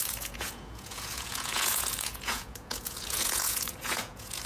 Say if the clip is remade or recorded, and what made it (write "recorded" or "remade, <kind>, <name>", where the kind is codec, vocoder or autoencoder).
remade, vocoder, Vocos